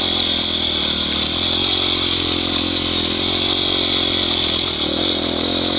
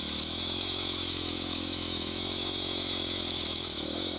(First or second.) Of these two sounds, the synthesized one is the second